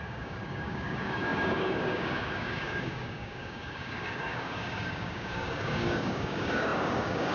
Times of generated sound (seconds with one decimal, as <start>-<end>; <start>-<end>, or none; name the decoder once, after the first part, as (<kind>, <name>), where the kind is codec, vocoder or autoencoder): 0.0-7.3 (codec, DAC)